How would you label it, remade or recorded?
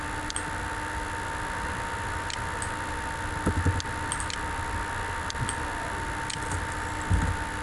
recorded